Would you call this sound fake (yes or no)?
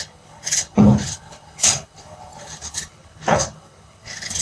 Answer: yes